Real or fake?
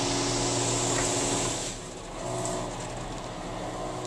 real